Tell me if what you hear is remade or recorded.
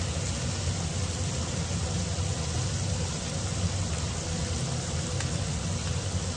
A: recorded